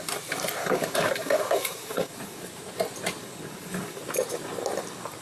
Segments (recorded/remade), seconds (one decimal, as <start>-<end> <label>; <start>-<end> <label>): 0.0-0.6 recorded; 0.6-2.4 remade; 2.4-3.2 recorded; 3.2-4.0 remade; 4.0-5.2 recorded

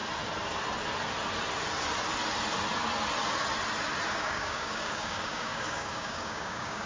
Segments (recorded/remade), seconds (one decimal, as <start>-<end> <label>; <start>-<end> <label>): 0.0-4.1 recorded; 4.1-6.9 remade

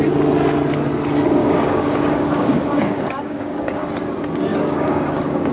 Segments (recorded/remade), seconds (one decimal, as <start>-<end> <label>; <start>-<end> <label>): 0.0-1.4 recorded; 1.4-3.9 remade; 3.9-4.5 recorded; 4.5-5.5 remade

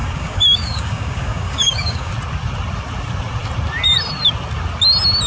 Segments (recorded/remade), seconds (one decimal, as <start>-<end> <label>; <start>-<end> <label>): 0.0-2.1 remade; 2.1-5.3 recorded

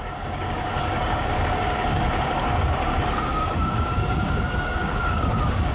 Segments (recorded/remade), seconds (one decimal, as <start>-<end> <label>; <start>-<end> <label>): 0.0-5.7 remade

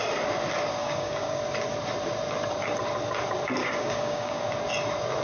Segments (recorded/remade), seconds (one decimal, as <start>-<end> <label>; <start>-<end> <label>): 0.0-0.8 recorded; 0.8-1.4 remade; 1.4-3.6 recorded; 3.6-4.4 remade; 4.4-5.2 recorded

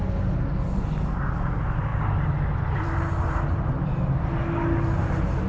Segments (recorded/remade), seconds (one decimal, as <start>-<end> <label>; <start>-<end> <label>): 0.0-5.5 recorded